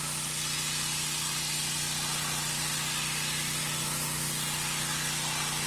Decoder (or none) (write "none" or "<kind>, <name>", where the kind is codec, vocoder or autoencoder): none